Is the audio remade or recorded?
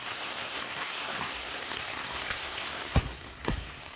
remade